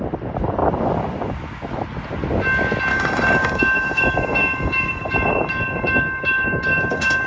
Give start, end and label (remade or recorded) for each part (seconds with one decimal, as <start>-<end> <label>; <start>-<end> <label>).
0.0-2.9 recorded; 2.9-7.3 remade